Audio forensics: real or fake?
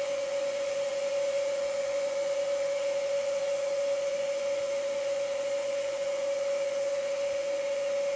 fake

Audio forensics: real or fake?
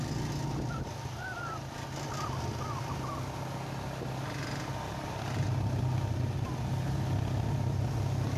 real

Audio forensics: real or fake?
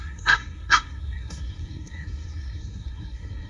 fake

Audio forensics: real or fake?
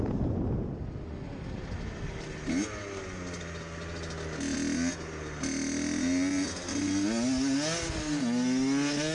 real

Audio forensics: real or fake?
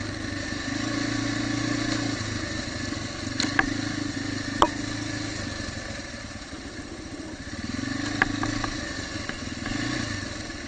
real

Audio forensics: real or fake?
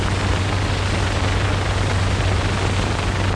real